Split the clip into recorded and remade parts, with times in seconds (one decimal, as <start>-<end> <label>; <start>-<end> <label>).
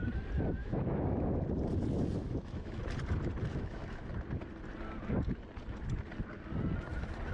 0.0-0.6 recorded; 0.6-1.4 remade; 1.4-2.2 recorded; 2.2-2.8 remade; 2.8-3.5 recorded; 3.5-4.1 remade; 4.1-7.3 recorded